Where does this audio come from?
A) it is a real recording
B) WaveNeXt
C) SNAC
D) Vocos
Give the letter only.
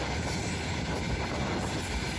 A